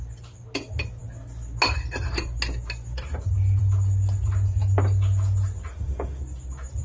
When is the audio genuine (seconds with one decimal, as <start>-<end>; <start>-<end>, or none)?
0.0-5.7; 6.2-6.8